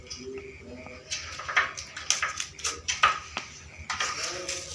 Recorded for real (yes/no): yes